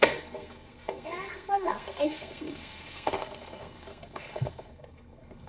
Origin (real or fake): fake